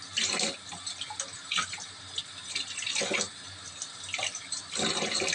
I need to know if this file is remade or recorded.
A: recorded